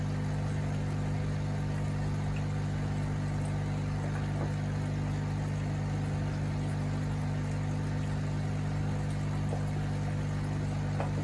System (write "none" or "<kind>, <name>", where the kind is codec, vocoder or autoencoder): none